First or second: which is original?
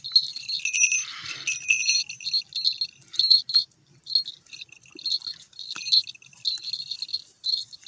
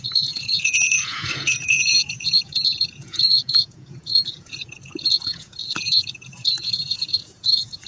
first